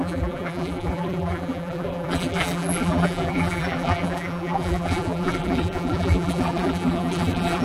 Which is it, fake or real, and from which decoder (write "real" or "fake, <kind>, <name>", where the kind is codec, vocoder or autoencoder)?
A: fake, vocoder, BigVGAN v2